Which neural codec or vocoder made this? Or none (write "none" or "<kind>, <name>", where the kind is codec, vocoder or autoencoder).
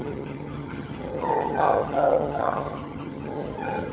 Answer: vocoder, HiFi-GAN